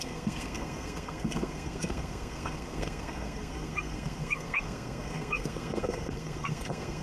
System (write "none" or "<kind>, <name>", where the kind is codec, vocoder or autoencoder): codec, SNAC